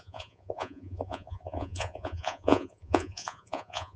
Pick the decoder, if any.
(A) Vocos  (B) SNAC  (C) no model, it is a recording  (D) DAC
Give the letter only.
A